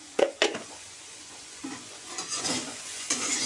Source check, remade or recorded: remade